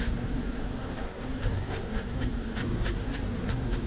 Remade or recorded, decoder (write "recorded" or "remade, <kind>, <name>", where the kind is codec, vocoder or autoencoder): remade, codec, SNAC